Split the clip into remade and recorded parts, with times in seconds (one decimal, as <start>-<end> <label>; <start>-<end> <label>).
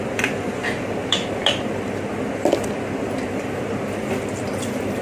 0.0-1.0 recorded; 1.0-4.0 remade; 4.0-5.0 recorded